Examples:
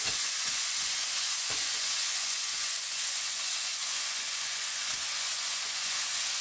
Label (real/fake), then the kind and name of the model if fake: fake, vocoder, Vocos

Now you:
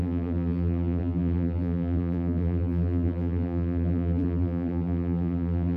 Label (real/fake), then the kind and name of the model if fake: fake, vocoder, BigVGAN v2